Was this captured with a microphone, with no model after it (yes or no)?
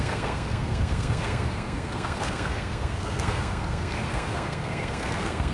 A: no